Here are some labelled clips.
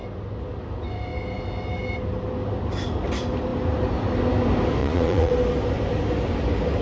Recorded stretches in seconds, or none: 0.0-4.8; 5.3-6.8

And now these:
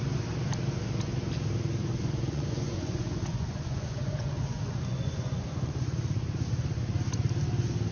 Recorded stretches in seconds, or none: 0.0-1.8; 5.9-7.9

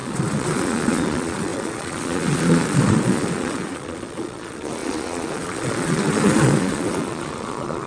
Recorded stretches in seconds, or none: none

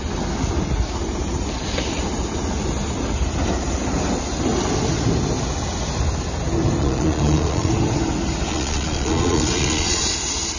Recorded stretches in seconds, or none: 0.0-6.8; 7.7-8.5; 10.0-10.6